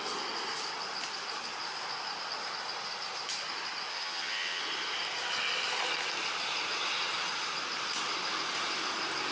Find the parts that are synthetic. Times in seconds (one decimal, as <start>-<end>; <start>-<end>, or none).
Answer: 3.9-4.6